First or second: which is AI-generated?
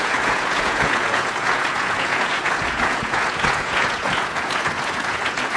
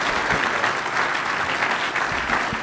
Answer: first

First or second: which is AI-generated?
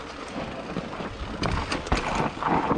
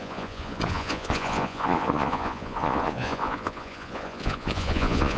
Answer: second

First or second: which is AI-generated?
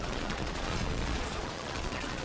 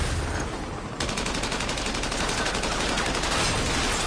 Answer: first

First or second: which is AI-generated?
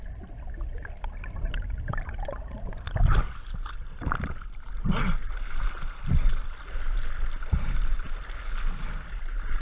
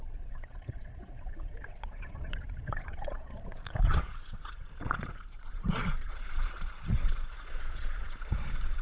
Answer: second